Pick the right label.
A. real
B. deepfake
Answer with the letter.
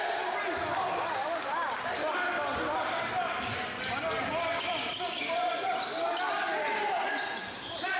A